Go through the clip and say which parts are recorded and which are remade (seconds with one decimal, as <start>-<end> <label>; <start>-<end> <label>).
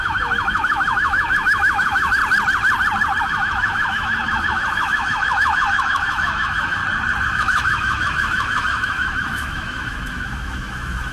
0.0-2.2 remade; 2.2-3.2 recorded; 3.2-6.8 remade; 6.8-7.3 recorded; 7.3-11.1 remade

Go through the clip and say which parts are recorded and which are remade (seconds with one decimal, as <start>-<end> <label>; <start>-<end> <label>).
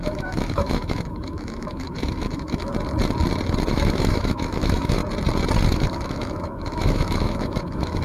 0.0-2.7 remade; 2.7-3.7 recorded; 3.7-5.0 remade; 5.0-5.7 recorded; 5.7-8.0 remade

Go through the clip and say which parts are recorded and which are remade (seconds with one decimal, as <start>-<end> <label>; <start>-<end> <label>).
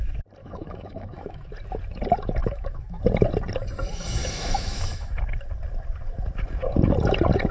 0.0-0.4 recorded; 0.4-1.5 remade; 1.5-2.4 recorded; 2.4-3.0 remade; 3.0-4.2 recorded; 4.2-5.1 remade; 5.1-7.5 recorded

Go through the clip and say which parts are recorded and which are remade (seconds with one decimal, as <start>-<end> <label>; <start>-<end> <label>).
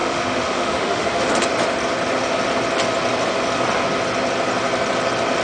0.0-1.3 remade; 1.3-5.4 recorded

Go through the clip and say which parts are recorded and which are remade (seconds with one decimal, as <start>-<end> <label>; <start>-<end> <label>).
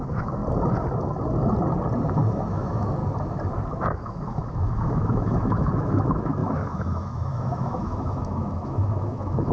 0.0-0.4 remade; 0.4-2.5 recorded; 2.5-3.0 remade; 3.0-3.7 recorded; 3.7-9.5 remade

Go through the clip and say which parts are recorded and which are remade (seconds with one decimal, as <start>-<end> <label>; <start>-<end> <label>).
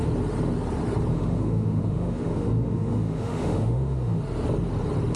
0.0-1.1 recorded; 1.1-4.2 remade; 4.2-5.2 recorded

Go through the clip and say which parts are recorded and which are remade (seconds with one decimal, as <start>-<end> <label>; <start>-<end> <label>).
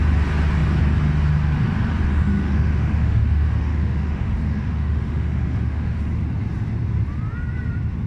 0.0-2.1 recorded; 2.1-6.1 remade; 6.1-8.1 recorded